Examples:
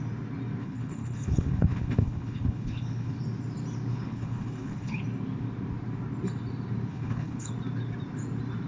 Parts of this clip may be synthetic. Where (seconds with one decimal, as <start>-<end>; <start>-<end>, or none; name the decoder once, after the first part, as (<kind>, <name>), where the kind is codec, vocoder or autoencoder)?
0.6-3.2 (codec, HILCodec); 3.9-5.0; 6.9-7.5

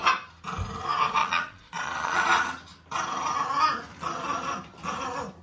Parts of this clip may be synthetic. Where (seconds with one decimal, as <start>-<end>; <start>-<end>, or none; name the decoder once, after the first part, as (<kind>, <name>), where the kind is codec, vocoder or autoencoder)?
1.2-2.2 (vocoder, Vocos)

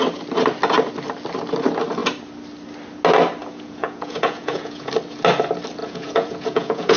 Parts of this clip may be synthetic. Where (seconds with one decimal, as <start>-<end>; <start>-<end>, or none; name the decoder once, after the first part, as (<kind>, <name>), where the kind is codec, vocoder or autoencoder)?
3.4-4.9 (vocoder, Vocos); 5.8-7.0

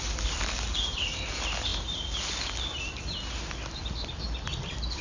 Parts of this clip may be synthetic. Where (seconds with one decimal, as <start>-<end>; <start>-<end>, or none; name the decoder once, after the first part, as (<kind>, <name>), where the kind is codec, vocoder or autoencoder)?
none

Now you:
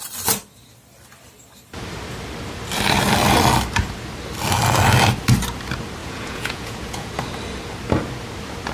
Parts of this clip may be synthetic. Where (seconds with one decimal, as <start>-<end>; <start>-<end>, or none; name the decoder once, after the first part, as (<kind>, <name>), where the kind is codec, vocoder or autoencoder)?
6.0-7.1 (vocoder, Vocos)

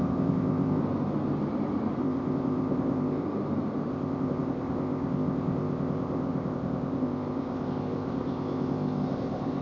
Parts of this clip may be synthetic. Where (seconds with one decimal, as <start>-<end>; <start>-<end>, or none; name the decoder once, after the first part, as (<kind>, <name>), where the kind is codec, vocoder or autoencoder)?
0.0-0.8 (codec, ZipCodec); 2.0-3.2; 3.9-9.6